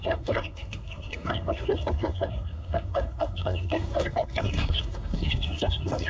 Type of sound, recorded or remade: remade